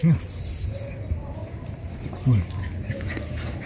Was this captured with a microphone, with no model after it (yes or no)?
no